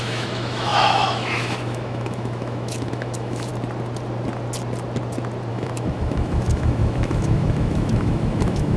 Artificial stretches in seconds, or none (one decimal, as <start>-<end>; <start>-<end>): 0.0-3.5; 5.5-8.8